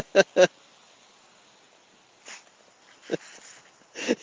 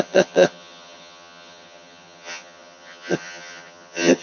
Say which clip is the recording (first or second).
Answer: first